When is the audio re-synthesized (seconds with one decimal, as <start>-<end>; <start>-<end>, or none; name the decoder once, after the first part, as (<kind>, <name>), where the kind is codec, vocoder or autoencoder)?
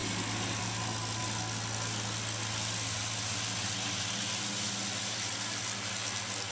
none